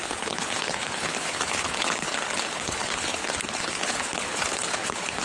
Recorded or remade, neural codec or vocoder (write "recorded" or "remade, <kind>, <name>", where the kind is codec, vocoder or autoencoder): remade, codec, HILCodec